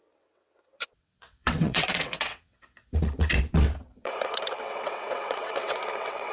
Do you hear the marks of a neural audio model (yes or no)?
yes